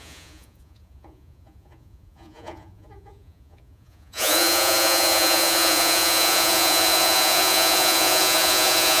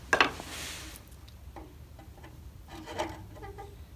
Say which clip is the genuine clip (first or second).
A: second